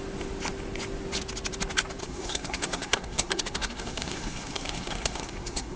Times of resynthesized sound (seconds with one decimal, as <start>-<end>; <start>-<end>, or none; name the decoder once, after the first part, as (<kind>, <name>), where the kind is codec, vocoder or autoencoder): 2.0-5.8 (codec, SNAC)